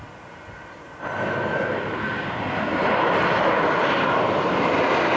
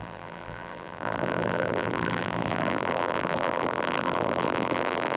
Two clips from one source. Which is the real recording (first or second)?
first